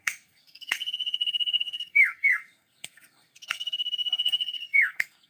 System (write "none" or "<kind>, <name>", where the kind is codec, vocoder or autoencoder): codec, SNAC